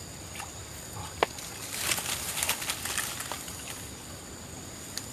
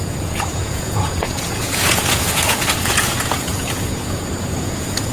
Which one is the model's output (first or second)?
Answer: second